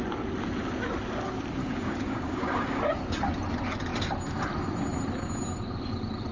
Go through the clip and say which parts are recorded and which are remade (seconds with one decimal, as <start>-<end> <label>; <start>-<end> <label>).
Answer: 0.0-1.6 recorded; 1.6-2.8 remade; 2.8-6.3 recorded